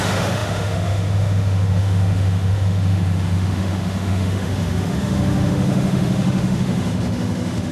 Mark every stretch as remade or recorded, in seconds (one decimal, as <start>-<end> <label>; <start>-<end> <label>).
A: 0.0-7.7 remade